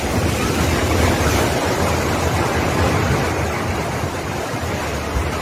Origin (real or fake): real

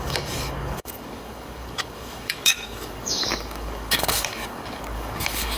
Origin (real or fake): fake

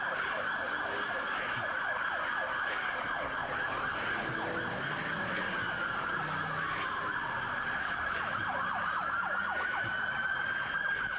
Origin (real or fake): real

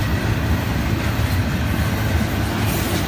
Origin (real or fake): real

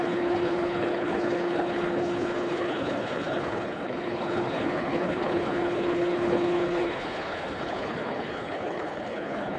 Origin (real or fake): fake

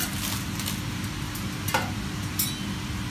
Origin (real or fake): real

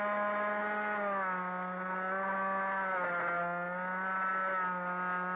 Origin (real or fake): real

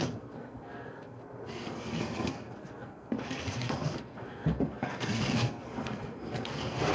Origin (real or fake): fake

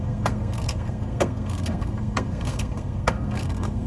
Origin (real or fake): fake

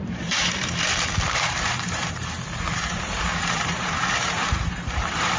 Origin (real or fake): fake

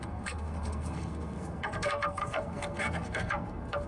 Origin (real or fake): fake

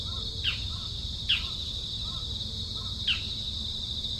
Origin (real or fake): real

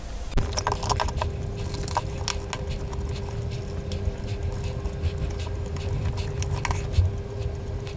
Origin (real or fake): real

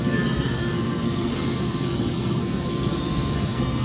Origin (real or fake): fake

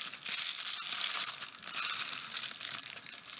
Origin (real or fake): real